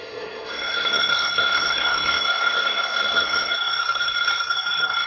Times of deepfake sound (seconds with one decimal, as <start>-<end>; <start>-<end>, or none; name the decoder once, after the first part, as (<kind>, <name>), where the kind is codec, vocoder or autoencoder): 0.0-5.1 (codec, SNAC)